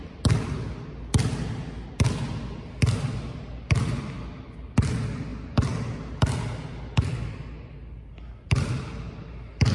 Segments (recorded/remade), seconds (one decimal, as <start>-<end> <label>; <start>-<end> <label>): 0.0-9.7 recorded